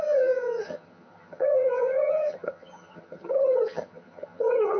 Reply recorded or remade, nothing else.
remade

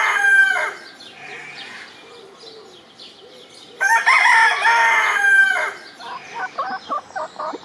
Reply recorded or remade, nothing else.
recorded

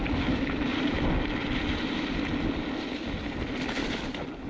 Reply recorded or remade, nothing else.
recorded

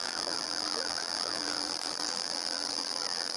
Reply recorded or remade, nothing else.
remade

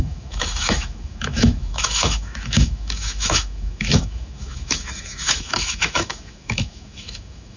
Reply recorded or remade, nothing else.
remade